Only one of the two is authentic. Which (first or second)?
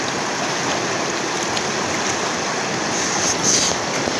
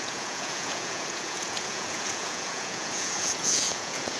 first